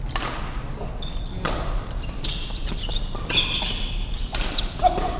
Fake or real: real